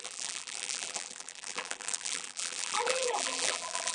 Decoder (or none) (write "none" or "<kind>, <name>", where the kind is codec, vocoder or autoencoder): vocoder, BigVGAN v2